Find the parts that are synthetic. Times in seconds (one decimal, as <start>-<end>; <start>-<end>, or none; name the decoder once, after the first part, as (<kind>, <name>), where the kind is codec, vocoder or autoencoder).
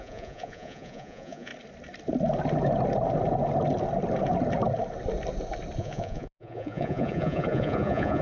0.0-1.5 (vocoder, Vocos); 5.8-8.2